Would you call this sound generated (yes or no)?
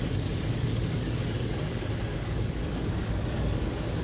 yes